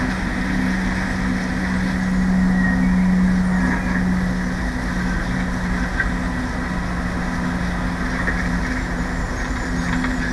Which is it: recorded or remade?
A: recorded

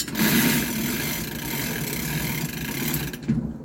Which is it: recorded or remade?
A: recorded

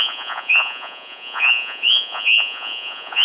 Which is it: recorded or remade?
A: remade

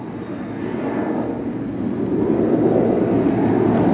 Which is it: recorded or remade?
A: recorded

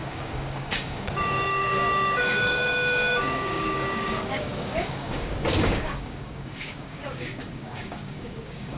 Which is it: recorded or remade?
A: remade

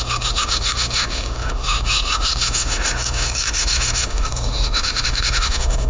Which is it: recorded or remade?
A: remade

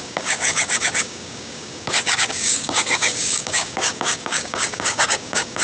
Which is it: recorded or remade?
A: remade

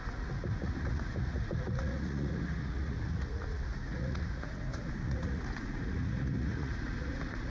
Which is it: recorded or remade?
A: remade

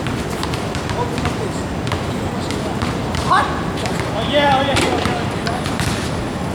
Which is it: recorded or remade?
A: remade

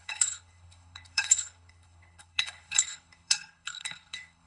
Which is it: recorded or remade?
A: remade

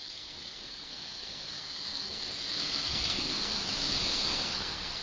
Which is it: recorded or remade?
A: remade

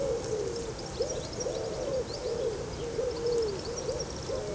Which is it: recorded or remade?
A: recorded